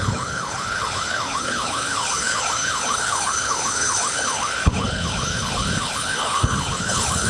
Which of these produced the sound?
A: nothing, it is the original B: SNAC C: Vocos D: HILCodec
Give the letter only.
D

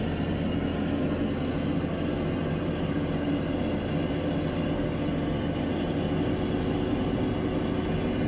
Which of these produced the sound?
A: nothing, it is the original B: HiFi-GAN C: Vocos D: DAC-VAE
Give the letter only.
A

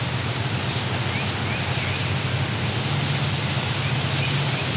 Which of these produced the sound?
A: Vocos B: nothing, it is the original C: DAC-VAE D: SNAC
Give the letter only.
B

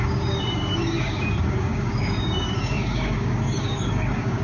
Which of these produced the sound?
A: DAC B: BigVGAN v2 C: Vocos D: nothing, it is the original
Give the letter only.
A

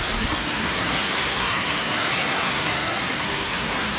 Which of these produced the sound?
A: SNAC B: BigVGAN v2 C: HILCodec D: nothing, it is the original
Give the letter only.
A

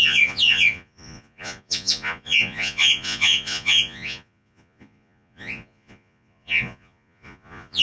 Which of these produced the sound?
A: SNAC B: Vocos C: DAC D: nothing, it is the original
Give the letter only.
B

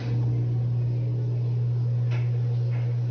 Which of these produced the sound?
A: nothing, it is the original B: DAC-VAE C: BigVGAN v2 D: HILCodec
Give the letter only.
A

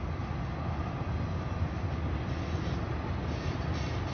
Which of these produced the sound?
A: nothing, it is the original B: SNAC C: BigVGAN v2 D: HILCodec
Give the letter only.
A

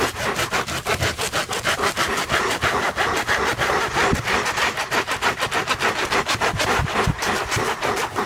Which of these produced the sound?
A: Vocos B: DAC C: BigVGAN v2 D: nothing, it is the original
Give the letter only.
D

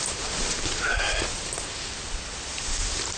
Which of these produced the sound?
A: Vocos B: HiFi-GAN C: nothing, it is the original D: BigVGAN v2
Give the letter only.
C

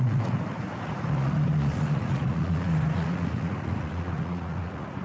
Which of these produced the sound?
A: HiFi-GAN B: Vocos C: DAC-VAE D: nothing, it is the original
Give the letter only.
B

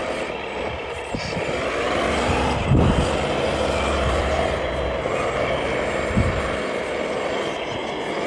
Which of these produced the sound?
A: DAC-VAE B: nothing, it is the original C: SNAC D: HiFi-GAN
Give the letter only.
B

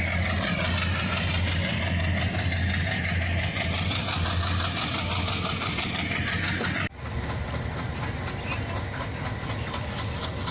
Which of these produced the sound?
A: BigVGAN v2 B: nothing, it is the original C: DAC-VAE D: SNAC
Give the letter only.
B